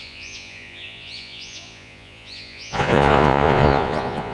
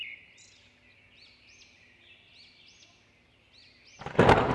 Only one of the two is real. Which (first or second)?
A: second